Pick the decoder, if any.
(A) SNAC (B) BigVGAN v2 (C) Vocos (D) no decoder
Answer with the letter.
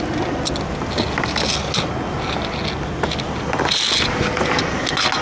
D